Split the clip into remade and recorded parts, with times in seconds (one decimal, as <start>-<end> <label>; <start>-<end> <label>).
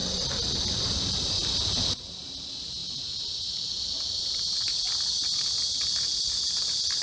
0.0-7.0 recorded